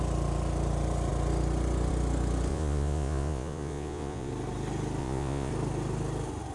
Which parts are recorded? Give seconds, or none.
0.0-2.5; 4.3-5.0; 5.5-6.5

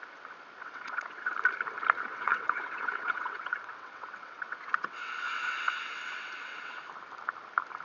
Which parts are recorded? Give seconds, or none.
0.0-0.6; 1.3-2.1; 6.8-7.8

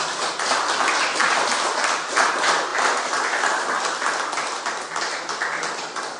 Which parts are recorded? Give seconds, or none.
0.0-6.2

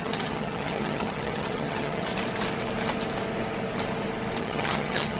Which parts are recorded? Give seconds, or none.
2.1-4.4

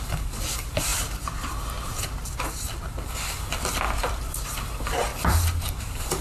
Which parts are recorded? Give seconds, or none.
5.1-5.8

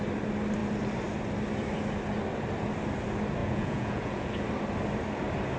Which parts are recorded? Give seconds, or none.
0.0-3.4; 4.3-5.6